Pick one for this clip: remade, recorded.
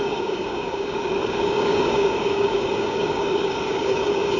remade